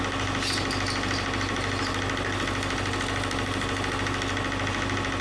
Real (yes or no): yes